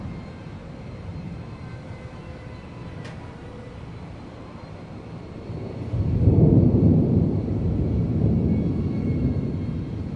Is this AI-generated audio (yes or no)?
yes